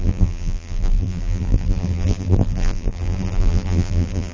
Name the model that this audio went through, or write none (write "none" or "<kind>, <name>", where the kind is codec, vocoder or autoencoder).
vocoder, BigVGAN v2